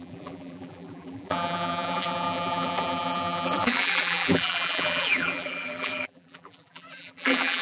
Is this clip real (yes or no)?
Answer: no